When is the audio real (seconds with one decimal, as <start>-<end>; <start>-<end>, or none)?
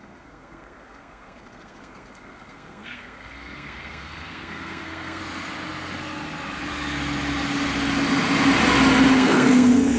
5.2-9.1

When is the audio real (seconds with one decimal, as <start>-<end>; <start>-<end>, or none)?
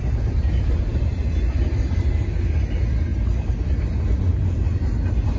0.0-5.4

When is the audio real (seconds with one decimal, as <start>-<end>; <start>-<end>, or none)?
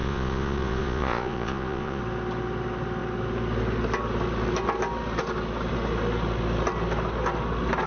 2.0-7.9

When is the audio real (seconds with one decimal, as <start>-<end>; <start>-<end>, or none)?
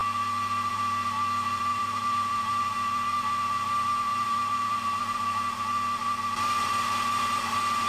0.0-1.7; 2.6-4.1; 5.0-7.9